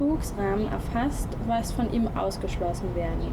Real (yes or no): yes